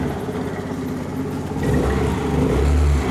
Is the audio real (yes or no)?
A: yes